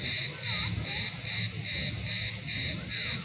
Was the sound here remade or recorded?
recorded